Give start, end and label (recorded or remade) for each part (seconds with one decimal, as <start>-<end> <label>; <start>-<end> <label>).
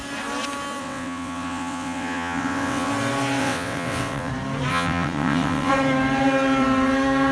0.0-0.8 recorded; 0.8-2.9 remade; 2.9-3.4 recorded; 3.4-4.3 remade; 4.3-4.7 recorded; 4.7-5.7 remade; 5.7-7.3 recorded